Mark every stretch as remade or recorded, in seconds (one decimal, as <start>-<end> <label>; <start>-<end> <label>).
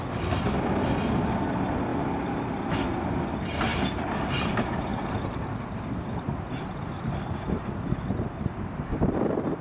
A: 0.0-3.7 recorded; 3.7-4.5 remade; 4.5-4.9 recorded; 4.9-9.0 remade; 9.0-9.6 recorded